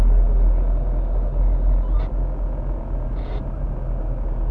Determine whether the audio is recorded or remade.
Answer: recorded